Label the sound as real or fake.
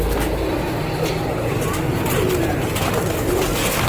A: real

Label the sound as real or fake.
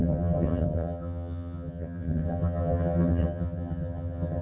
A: fake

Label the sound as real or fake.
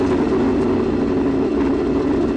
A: real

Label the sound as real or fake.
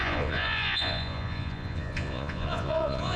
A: fake